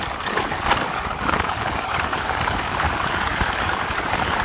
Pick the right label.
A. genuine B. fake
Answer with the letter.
B